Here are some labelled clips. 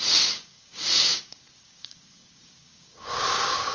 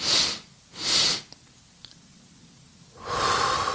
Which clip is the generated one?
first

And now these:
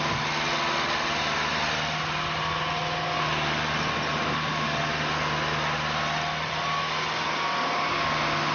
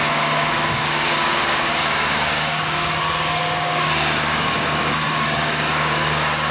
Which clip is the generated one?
second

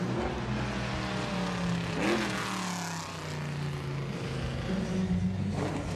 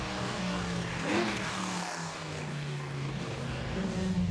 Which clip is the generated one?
second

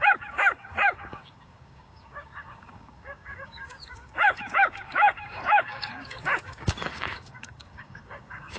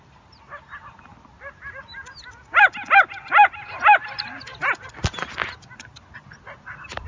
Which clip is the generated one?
first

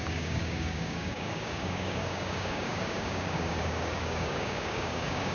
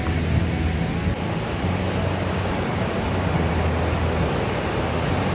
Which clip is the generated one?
first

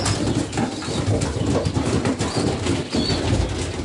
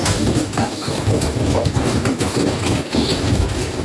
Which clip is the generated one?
second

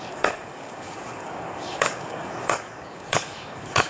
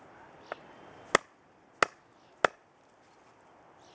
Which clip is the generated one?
first